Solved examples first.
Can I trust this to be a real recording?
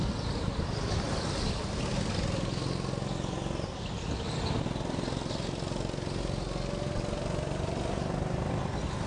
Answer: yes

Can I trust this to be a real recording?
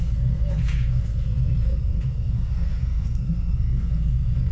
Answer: no